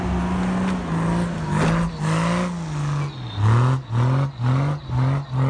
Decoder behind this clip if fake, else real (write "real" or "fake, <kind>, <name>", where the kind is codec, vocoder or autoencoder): real